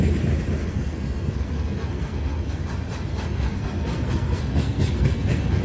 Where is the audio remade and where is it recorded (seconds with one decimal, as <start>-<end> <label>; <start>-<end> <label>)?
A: 0.0-0.6 recorded; 0.6-2.6 remade; 2.6-3.1 recorded; 3.1-5.6 remade